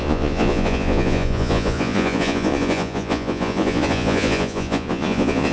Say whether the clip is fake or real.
fake